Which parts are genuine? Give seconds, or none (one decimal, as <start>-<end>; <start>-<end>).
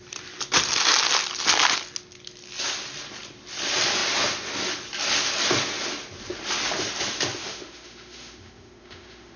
0.0-7.4